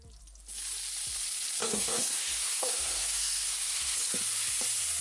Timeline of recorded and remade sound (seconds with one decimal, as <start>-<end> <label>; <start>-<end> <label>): 0.0-1.6 recorded; 1.6-4.0 remade; 4.0-5.0 recorded